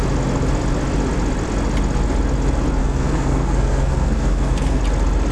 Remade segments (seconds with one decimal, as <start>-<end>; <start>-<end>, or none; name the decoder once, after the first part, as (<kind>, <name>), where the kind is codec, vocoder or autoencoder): 2.8-4.8 (codec, SNAC)